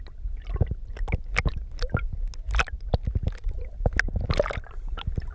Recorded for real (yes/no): yes